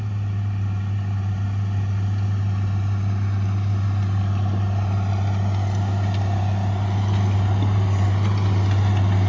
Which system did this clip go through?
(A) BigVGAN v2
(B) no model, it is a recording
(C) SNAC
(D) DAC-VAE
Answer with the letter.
B